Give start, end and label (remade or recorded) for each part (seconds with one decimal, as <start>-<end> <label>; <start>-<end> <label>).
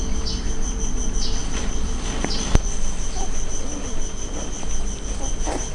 0.0-5.7 recorded